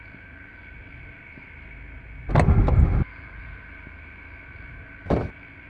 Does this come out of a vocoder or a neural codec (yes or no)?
no